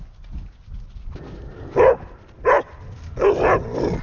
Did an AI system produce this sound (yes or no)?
no